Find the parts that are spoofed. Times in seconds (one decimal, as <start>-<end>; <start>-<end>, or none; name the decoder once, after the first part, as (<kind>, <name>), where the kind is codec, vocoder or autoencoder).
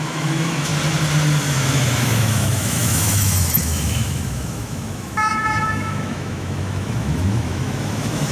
0.0-0.7 (autoencoder, DAC-VAE); 1.4-8.3